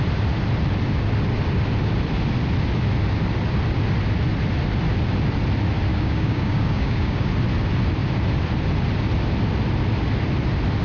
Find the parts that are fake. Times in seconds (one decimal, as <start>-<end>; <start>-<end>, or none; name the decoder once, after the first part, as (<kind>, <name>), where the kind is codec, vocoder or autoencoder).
5.9-7.3 (codec, DAC)

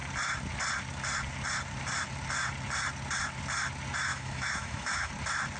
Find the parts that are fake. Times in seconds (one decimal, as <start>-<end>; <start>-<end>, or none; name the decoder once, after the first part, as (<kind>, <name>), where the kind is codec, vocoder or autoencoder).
4.1-5.1 (autoencoder, DAC-VAE)

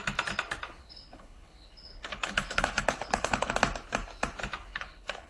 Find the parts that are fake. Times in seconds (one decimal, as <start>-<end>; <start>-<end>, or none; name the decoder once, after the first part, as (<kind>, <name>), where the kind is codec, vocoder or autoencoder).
0.8-3.5 (codec, HILCodec); 4.7-5.3

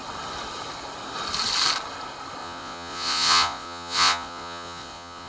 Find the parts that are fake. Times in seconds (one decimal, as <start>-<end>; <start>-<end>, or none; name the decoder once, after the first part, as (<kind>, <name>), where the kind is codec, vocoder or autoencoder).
2.4-5.3 (vocoder, Vocos)

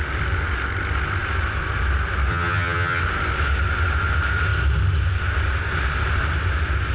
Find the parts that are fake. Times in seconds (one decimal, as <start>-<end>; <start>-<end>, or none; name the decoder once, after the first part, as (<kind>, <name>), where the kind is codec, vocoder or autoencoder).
2.3-3.0 (vocoder, HiFi-GAN)

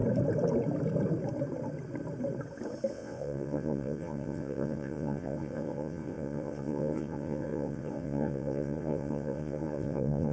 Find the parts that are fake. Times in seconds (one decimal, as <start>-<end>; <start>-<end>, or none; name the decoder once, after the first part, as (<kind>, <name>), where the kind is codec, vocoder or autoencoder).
2.9-10.3 (vocoder, WaveNeXt)

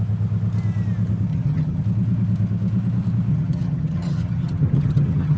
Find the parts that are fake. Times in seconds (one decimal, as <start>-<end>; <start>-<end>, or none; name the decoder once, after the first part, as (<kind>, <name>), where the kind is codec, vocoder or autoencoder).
1.3-1.8 (vocoder, HiFi-GAN); 3.3-5.4

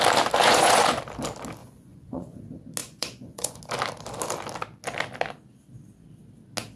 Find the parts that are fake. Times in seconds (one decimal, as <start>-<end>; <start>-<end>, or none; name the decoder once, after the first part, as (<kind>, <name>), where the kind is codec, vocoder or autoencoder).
0.4-1.0 (vocoder, Vocos); 1.6-2.4; 2.8-3.6